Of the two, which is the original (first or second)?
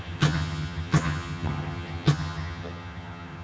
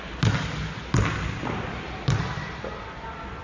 second